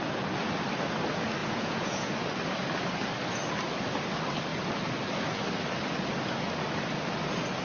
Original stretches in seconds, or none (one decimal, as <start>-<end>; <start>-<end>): 0.0-1.4; 2.1-7.6